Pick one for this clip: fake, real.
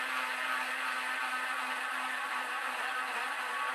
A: real